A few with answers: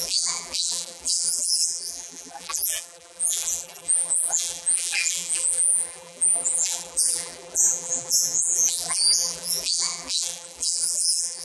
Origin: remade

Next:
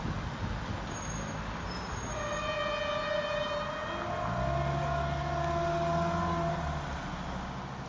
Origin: recorded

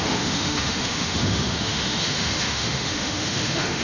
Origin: remade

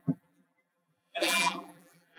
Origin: remade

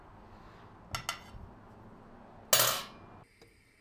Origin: recorded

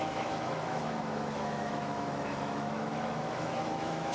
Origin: remade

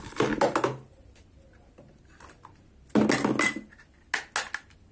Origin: recorded